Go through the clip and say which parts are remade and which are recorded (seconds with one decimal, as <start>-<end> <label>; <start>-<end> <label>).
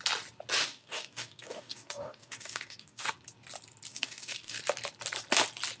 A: 0.0-0.6 recorded; 0.6-3.1 remade; 3.1-3.9 recorded; 3.9-4.6 remade; 4.6-5.8 recorded